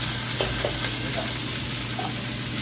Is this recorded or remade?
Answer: recorded